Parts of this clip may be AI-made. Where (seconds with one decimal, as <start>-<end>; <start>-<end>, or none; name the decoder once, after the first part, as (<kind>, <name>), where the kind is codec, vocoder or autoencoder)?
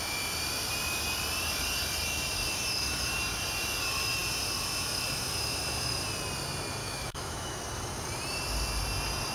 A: 6.8-7.6 (autoencoder, DAC-VAE)